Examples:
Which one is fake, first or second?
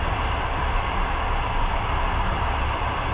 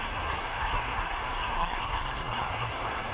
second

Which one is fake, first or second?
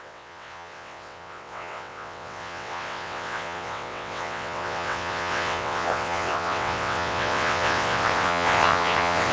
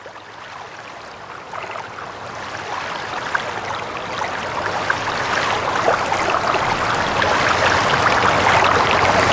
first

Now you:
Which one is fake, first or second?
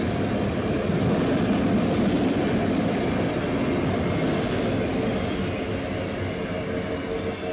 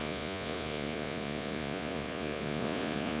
second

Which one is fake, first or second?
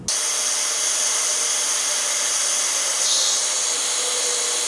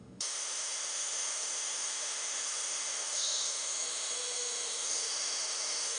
second